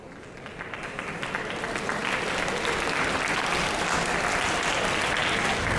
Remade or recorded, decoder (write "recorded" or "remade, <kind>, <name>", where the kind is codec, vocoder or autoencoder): recorded